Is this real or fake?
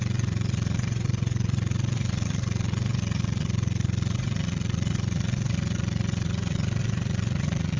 fake